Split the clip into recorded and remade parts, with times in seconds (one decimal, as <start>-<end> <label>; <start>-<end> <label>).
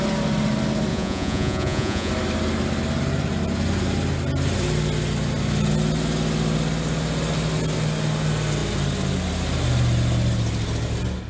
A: 0.0-0.9 recorded; 0.9-2.1 remade; 2.1-11.3 recorded